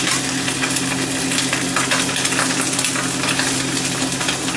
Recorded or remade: recorded